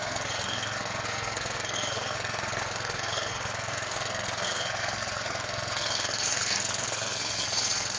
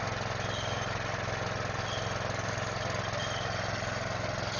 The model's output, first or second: first